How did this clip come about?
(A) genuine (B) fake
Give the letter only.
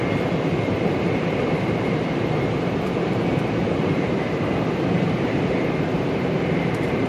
B